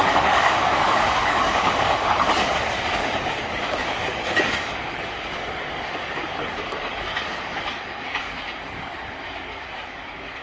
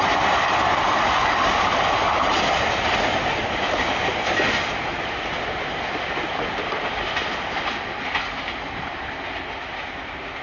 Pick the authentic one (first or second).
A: second